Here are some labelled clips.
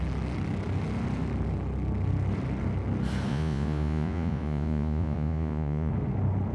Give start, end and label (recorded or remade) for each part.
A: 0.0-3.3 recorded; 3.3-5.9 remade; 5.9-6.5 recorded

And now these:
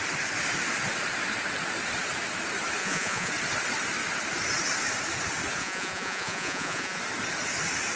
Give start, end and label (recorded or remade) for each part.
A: 0.0-2.8 recorded; 2.8-3.3 remade; 3.3-5.6 recorded; 5.6-7.0 remade; 7.0-8.0 recorded

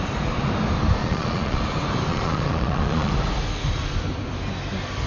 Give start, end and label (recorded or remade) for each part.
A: 0.0-1.0 recorded; 1.0-1.6 remade; 1.6-2.1 recorded; 2.1-3.1 remade; 3.1-5.1 recorded